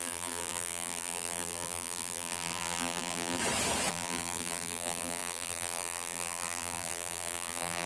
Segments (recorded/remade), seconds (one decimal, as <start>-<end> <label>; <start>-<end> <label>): 0.0-3.4 remade; 3.4-3.9 recorded; 3.9-7.9 remade